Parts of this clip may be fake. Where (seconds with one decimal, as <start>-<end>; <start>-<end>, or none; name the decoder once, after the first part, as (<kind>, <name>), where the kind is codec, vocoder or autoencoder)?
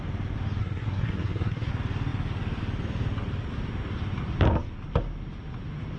0.6-1.7 (codec, SNAC)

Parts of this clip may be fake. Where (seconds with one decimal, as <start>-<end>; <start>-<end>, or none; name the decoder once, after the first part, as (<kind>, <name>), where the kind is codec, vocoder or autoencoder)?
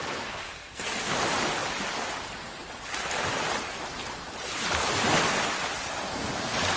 0.0-1.1 (codec, SNAC)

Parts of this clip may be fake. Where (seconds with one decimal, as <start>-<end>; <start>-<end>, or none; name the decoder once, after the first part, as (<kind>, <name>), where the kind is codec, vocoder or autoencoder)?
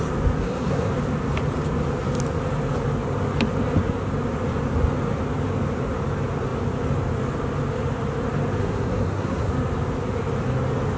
0.4-0.9 (codec, SNAC); 8.6-9.5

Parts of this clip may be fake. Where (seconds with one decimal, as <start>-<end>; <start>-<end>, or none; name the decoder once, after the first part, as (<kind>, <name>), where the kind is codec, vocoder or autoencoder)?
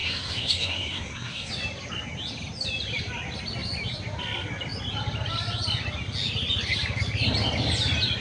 0.0-1.5 (codec, SNAC)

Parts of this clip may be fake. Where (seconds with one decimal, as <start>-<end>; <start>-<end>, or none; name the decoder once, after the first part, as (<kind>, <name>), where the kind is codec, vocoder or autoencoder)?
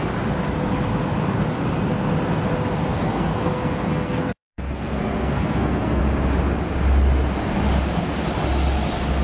2.9-6.0 (codec, SNAC)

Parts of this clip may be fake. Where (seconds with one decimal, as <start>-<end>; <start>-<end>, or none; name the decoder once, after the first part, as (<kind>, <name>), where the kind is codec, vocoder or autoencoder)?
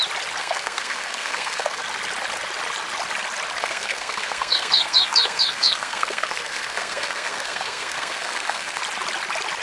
0.4-1.8 (codec, SNAC); 3.6-8.8